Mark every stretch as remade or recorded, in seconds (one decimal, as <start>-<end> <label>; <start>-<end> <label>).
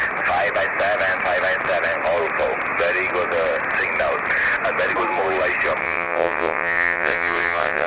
0.0-5.8 recorded; 5.8-7.9 remade